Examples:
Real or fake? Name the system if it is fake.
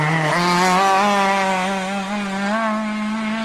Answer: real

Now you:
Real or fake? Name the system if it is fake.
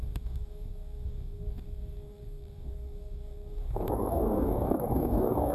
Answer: fake, codec, DAC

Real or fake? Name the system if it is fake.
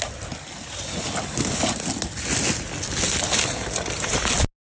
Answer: real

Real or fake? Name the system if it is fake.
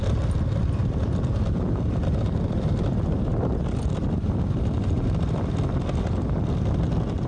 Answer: real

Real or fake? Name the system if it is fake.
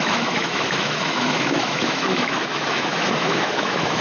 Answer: fake, autoencoder, DAC-VAE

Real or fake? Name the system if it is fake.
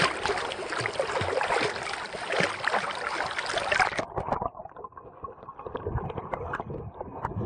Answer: real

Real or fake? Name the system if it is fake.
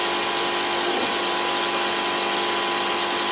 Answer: real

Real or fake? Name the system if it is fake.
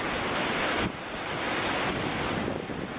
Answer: real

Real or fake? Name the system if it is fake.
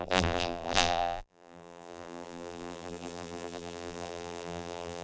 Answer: fake, vocoder, BigVGAN v2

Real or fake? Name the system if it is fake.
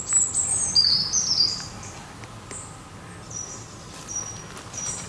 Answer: real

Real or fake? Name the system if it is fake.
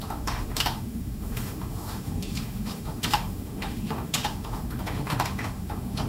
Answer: fake, autoencoder, DAC-VAE